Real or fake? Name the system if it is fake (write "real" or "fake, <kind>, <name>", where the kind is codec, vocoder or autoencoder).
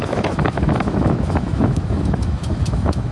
fake, autoencoder, DAC-VAE